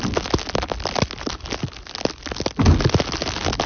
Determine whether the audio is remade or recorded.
recorded